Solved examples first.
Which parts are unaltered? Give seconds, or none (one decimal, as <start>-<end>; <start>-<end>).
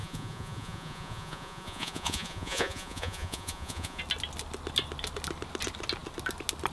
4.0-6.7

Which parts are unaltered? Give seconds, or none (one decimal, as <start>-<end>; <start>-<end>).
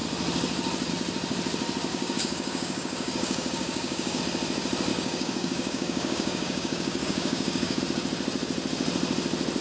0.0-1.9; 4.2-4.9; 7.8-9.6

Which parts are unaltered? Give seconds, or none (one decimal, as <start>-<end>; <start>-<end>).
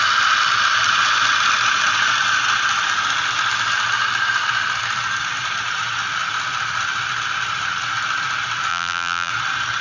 0.0-8.7; 9.3-9.8